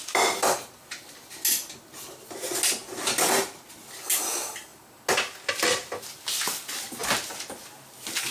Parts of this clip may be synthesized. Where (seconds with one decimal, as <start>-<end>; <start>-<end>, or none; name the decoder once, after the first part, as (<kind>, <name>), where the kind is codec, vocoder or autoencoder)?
none